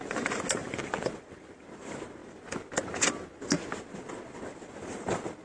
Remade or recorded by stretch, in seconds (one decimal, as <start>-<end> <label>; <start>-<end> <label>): 0.0-5.4 recorded